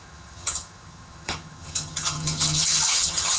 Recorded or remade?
remade